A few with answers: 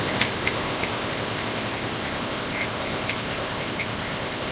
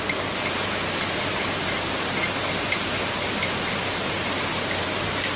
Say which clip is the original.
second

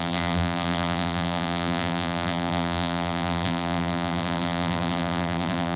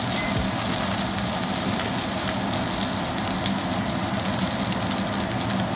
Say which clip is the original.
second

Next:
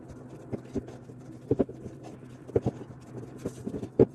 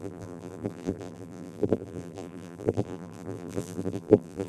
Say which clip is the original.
first